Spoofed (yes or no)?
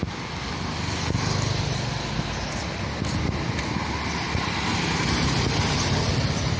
no